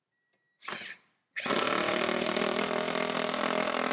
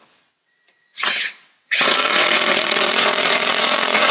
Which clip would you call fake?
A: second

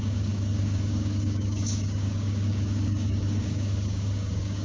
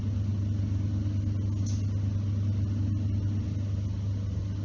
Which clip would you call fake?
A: first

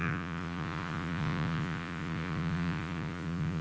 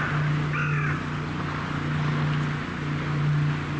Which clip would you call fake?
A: first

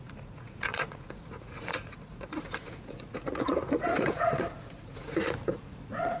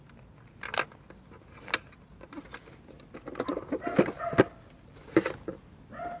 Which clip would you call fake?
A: first